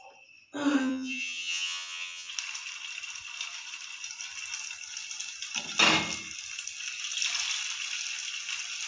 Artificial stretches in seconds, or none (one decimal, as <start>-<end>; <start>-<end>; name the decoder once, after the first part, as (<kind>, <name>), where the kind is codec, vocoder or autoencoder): 0.8-2.3 (vocoder, HiFi-GAN)